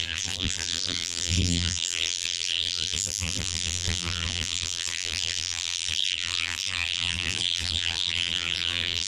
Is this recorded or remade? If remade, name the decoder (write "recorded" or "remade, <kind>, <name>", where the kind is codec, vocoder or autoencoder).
remade, vocoder, BigVGAN v2